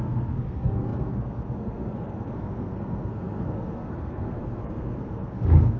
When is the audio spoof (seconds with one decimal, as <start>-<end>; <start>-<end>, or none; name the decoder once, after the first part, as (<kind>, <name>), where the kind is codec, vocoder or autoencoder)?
0.0-5.8 (codec, SNAC)